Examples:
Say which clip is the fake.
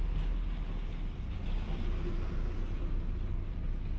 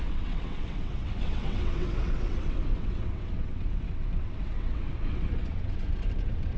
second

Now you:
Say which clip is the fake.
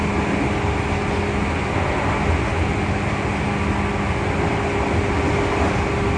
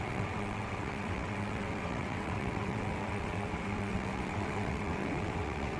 second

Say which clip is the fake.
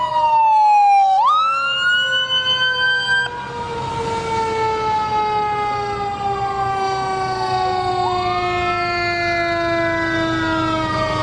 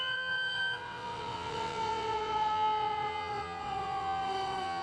second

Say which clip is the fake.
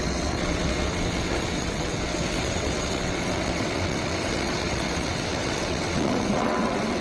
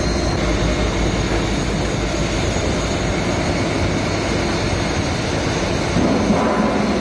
first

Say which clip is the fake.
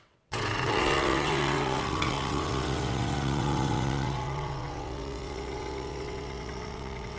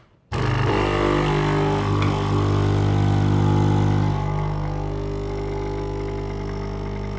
first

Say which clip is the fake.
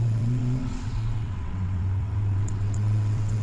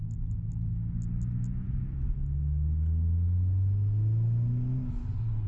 first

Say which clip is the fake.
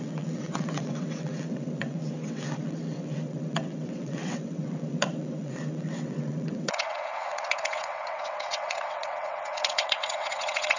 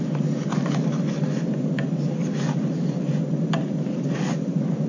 first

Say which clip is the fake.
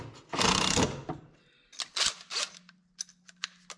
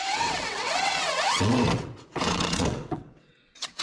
second